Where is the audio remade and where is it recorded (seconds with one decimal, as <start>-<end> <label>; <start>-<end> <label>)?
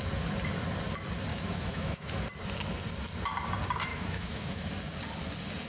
0.0-1.3 recorded; 1.3-2.1 remade; 2.1-3.9 recorded; 3.9-4.7 remade; 4.7-5.7 recorded